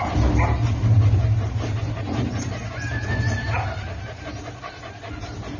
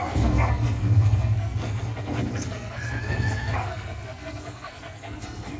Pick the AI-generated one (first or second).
second